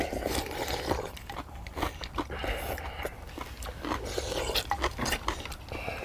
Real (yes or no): yes